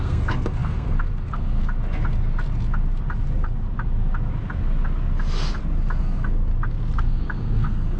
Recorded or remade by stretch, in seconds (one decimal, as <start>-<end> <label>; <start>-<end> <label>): 0.0-1.6 remade; 1.6-6.0 recorded; 6.0-6.5 remade; 6.5-7.0 recorded; 7.0-8.0 remade